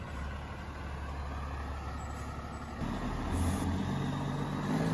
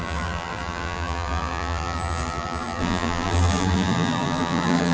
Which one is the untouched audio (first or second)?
first